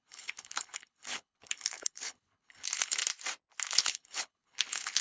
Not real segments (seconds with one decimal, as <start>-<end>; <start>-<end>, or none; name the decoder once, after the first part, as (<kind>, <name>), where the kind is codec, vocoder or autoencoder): 0.0-3.0 (codec, HILCodec); 3.8-5.0

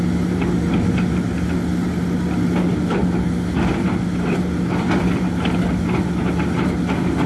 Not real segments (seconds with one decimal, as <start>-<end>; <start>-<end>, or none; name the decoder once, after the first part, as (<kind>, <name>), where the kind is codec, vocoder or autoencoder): none

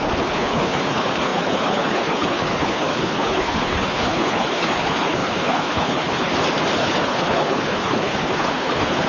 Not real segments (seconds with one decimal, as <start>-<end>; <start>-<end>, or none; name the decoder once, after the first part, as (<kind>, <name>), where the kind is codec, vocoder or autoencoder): 0.0-6.3 (codec, HILCodec); 6.8-9.1

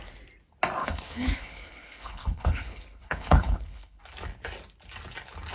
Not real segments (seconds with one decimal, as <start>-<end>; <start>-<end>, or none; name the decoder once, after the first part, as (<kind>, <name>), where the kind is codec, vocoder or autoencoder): 0.8-4.0 (codec, HILCodec)